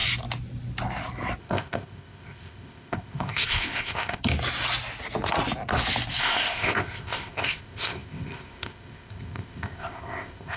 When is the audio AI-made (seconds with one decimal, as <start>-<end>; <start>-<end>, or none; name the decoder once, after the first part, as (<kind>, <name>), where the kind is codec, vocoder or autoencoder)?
1.4-4.2 (codec, ZipCodec); 6.2-10.6